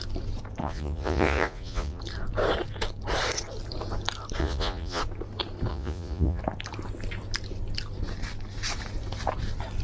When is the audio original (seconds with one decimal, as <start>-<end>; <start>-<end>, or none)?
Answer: 0.0-0.6; 2.0-4.4; 5.0-5.7; 6.4-9.8